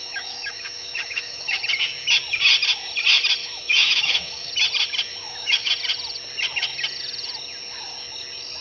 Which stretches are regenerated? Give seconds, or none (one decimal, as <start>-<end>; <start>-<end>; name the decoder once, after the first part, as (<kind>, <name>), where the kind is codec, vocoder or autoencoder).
0.0-1.6 (autoencoder, DAC-VAE); 3.4-4.5; 5.1-5.7